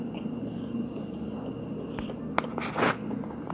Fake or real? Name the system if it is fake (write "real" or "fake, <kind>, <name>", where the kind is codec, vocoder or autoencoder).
real